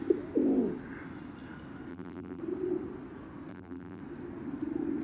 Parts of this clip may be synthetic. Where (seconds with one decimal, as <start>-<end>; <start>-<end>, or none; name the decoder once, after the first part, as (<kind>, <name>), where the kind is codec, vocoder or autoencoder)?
1.9-2.4 (vocoder, BigVGAN v2); 3.5-4.0